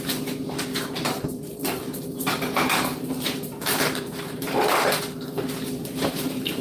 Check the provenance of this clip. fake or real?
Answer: fake